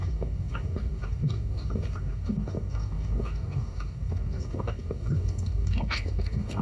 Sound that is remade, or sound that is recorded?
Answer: remade